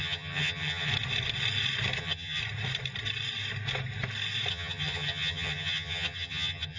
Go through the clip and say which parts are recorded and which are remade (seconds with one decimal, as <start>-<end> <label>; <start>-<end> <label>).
0.0-0.9 remade; 0.9-2.0 recorded; 2.0-2.4 remade; 2.4-4.5 recorded; 4.5-6.8 remade